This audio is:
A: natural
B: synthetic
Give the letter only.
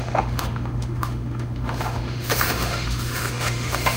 B